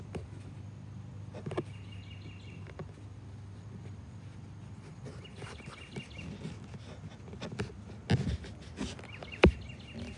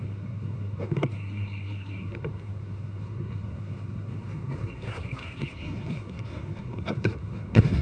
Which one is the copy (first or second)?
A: second